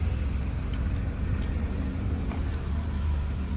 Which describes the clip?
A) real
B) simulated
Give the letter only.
A